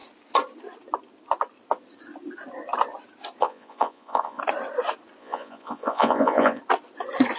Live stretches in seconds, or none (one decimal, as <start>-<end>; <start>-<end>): 0.0-3.4; 4.4-5.2; 6.6-7.4